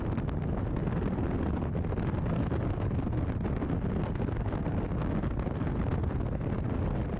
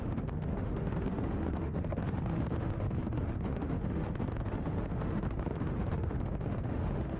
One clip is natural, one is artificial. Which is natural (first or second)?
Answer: first